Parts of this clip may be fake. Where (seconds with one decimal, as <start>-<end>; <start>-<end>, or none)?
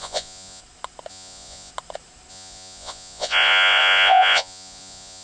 0.0-0.6; 1.1-1.7; 2.3-5.2